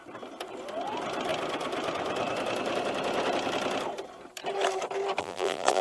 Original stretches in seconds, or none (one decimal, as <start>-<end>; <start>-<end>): 0.0-5.2